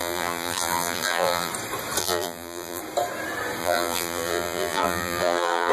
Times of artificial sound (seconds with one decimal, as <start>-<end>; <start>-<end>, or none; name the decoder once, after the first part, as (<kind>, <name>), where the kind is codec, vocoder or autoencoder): 0.0-1.5 (vocoder, BigVGAN v2); 2.0-2.8; 3.6-5.7